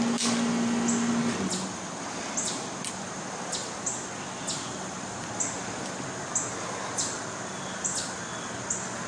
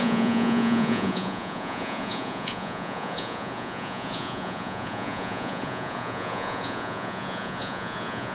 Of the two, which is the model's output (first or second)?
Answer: second